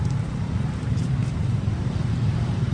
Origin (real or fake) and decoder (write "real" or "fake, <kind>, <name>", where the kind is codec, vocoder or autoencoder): fake, vocoder, BigVGAN v2